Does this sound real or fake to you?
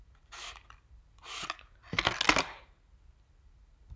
real